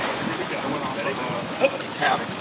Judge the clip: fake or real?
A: fake